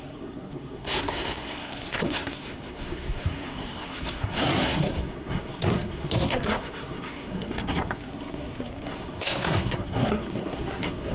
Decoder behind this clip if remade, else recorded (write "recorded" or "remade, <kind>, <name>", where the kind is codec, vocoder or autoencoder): remade, codec, SNAC